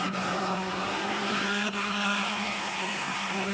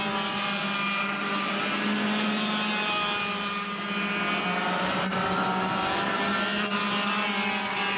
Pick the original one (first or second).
second